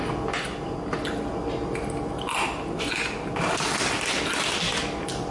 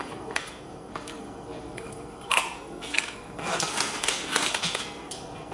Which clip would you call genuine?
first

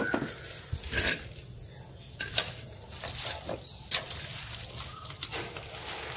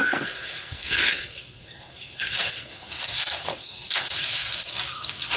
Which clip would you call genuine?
first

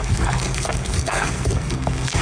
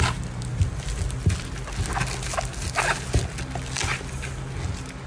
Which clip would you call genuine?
second